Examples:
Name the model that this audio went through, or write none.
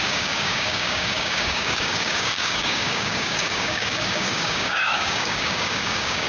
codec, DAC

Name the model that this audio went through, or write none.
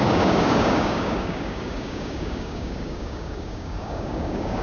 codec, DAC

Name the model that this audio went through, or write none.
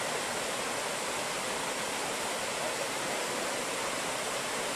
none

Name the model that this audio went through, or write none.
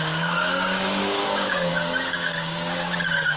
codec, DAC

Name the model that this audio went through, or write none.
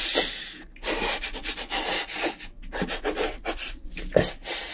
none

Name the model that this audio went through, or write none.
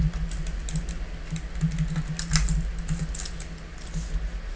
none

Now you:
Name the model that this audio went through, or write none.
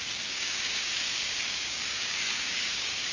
codec, DAC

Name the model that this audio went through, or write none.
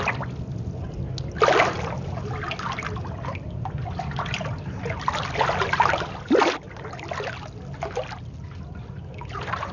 none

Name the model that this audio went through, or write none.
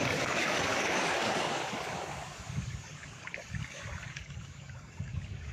codec, DAC